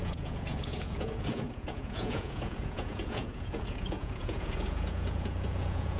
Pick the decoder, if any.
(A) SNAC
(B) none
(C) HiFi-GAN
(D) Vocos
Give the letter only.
D